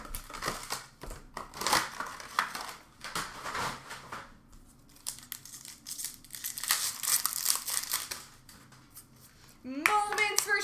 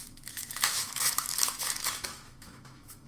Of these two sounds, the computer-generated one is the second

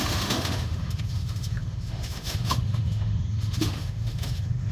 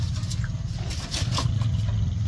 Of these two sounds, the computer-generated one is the first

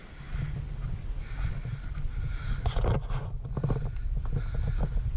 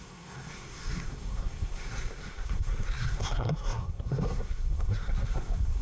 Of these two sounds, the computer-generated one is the second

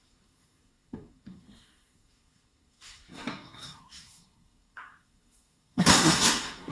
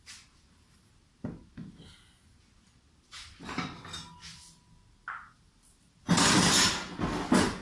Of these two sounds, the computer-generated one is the first